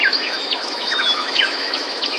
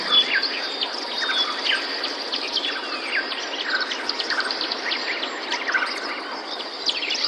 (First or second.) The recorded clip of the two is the second